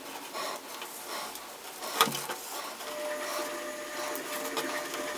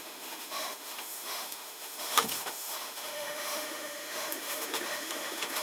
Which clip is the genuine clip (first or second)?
first